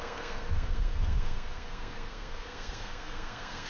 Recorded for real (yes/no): no